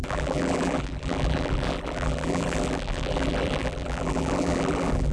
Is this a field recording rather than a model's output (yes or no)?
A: no